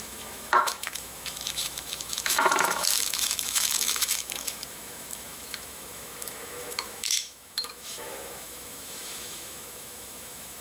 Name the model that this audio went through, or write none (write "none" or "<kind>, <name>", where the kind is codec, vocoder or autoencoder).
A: autoencoder, DAC-VAE